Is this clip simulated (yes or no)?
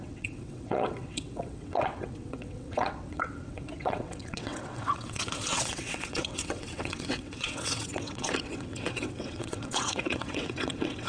yes